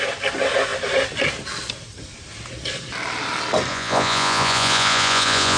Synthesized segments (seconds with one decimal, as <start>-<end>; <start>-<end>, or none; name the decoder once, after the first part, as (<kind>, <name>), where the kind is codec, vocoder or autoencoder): 3.7-5.6 (vocoder, Vocos)